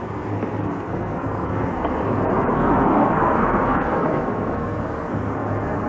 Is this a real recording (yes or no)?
no